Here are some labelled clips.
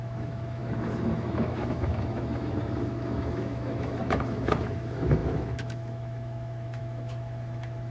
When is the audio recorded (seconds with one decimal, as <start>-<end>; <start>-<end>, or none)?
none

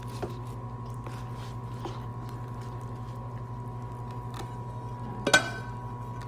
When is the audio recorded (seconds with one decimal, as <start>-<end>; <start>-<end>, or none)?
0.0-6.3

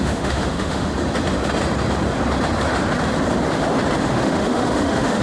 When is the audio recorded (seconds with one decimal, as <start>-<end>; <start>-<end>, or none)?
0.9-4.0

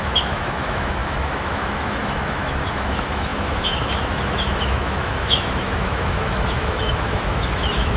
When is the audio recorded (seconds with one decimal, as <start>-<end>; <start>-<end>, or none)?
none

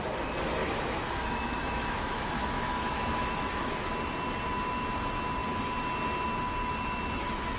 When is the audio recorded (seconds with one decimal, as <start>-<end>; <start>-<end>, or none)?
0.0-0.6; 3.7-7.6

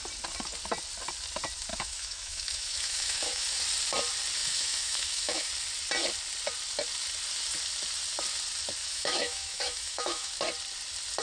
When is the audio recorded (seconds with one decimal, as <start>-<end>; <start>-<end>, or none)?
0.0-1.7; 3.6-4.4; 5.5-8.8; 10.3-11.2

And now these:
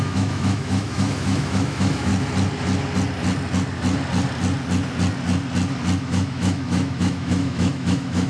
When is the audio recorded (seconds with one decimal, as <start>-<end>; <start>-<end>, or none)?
2.1-6.0